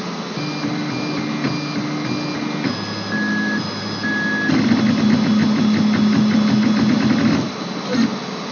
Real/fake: real